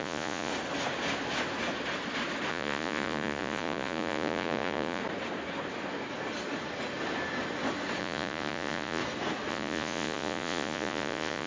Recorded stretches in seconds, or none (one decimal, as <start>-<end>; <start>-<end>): 0.5-2.5; 5.0-8.0; 9.0-9.5